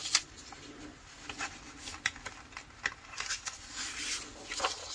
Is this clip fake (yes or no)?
no